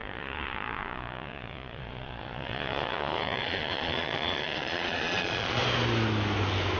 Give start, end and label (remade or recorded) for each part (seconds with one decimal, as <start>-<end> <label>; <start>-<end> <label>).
0.0-5.6 remade; 5.6-6.8 recorded